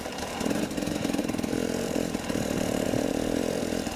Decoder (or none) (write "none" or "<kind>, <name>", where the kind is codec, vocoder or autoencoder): vocoder, BigVGAN v2